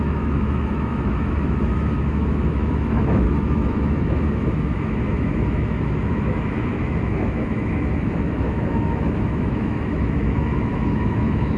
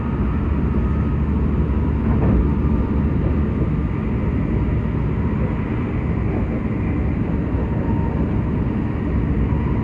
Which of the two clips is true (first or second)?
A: second